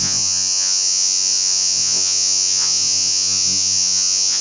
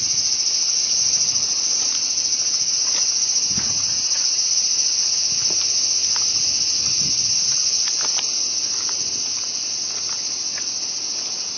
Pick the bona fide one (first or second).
second